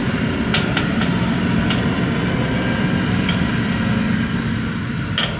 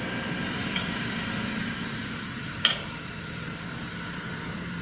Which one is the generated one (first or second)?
second